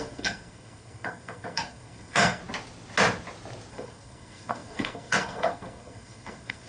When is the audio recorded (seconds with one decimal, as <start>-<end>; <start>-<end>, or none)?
2.4-3.7